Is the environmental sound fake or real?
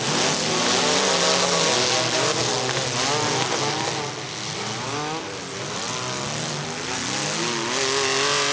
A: real